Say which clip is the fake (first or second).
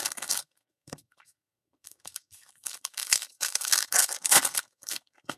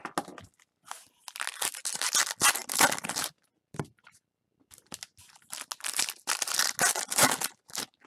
first